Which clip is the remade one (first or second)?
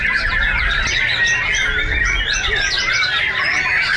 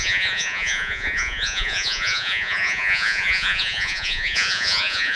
second